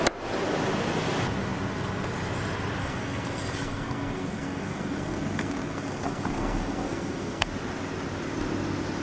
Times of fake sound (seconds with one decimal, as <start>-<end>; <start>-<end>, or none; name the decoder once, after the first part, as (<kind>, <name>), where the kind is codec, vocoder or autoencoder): 2.8-7.5 (codec, SNAC)